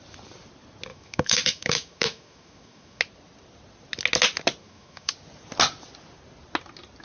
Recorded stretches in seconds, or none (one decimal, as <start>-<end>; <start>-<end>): 0.0-0.9; 3.0-4.6; 5.1-7.0